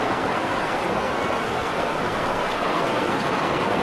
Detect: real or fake fake